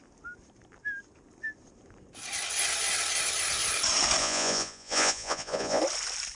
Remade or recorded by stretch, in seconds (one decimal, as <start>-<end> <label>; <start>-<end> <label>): 0.0-4.2 recorded; 4.2-5.8 remade; 5.8-6.4 recorded